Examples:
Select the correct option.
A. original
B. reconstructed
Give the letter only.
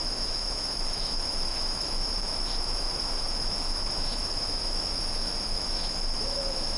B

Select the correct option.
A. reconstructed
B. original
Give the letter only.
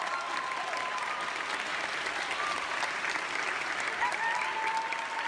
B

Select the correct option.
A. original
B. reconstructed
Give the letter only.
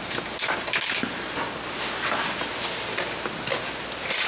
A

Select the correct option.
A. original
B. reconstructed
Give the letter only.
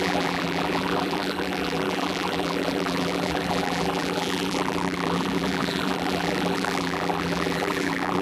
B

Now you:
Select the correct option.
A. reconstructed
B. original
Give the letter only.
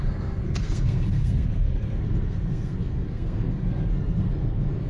A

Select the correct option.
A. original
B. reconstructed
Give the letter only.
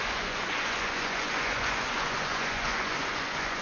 B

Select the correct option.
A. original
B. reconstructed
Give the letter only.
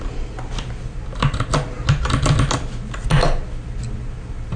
A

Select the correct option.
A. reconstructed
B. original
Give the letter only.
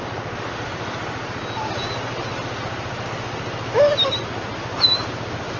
B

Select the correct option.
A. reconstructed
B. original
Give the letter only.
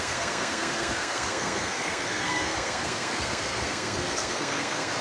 A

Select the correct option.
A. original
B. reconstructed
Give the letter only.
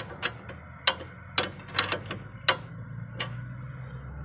A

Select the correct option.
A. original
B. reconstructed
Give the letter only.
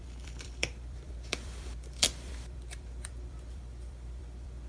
B